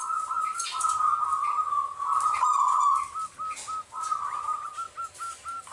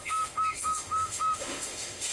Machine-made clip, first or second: second